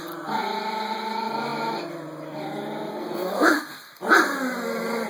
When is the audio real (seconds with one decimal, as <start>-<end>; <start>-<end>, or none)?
0.0-2.9; 4.0-5.1